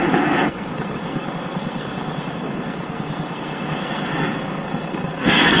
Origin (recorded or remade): remade